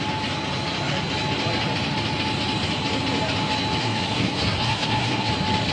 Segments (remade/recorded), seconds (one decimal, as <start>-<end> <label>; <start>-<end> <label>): 0.0-3.8 recorded; 3.8-5.3 remade; 5.3-5.7 recorded